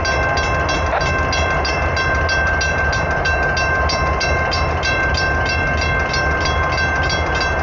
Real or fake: real